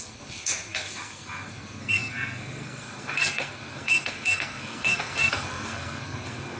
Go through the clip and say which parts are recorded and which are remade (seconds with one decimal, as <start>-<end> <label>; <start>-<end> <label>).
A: 0.0-6.6 remade